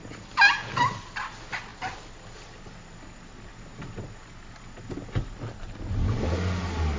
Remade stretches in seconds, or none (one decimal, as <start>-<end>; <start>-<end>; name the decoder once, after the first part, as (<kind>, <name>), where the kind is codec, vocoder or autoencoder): none